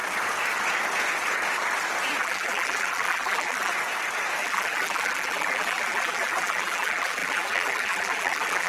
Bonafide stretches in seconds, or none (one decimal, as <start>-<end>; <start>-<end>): 0.0-2.2; 3.7-4.4